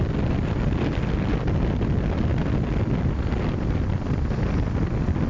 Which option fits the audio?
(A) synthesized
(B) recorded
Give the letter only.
B